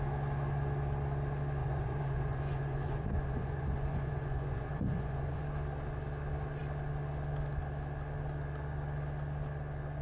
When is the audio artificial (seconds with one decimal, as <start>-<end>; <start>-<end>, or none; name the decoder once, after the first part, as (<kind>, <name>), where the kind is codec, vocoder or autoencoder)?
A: 1.6-5.4 (vocoder, Vocos)